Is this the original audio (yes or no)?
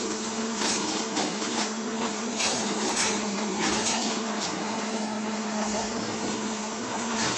no